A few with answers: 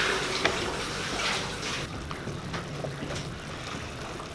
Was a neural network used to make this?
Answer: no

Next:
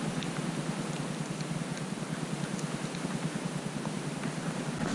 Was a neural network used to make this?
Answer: no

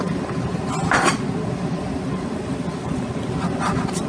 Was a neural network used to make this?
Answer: no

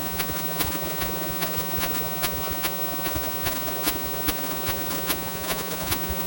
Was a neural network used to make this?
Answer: yes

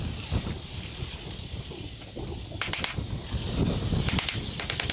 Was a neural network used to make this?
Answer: no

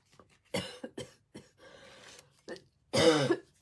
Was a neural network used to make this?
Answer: no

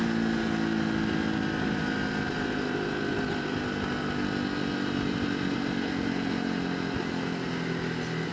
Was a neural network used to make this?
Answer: no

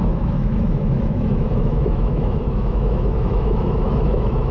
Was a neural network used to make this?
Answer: yes